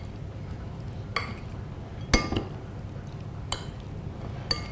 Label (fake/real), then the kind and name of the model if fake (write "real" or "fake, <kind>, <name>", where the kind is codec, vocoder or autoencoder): real